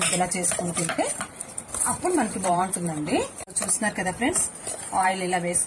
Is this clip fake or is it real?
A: fake